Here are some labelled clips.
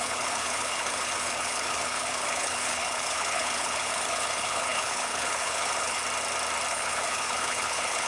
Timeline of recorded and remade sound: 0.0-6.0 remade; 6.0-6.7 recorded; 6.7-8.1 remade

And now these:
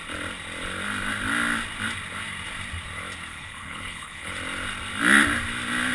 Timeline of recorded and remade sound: 0.0-3.3 recorded; 3.3-4.3 remade; 4.3-5.9 recorded

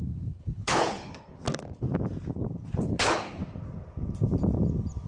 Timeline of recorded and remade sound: 0.0-1.4 remade; 1.4-2.8 recorded; 2.8-3.4 remade; 3.4-5.1 recorded

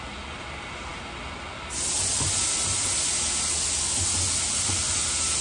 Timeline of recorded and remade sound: 0.0-5.4 recorded